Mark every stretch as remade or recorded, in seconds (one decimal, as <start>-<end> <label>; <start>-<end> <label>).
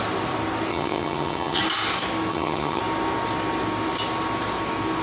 0.0-0.7 recorded; 0.7-1.6 remade; 1.6-2.3 recorded; 2.3-2.8 remade; 2.8-5.0 recorded